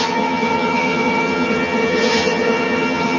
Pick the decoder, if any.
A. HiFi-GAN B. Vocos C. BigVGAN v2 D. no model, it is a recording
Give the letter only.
A